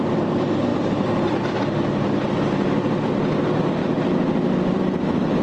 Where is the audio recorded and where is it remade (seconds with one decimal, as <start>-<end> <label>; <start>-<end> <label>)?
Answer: 0.0-0.7 recorded; 0.7-1.6 remade; 1.6-3.8 recorded; 3.8-4.8 remade; 4.8-5.4 recorded